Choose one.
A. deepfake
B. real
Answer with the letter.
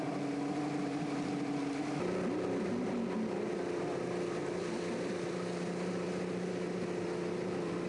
B